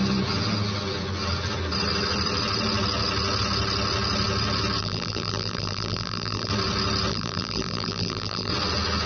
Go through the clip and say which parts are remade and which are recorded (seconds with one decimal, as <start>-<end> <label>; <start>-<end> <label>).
0.0-4.8 recorded; 4.8-6.5 remade; 6.5-7.1 recorded; 7.1-8.5 remade; 8.5-9.1 recorded